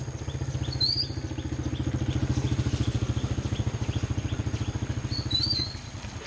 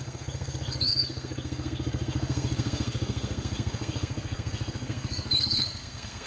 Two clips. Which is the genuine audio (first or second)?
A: first